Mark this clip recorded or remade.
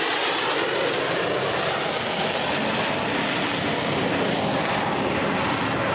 recorded